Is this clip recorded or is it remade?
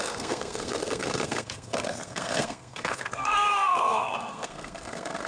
remade